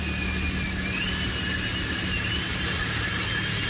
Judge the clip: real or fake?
real